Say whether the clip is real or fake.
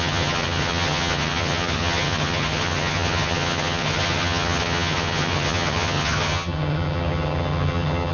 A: fake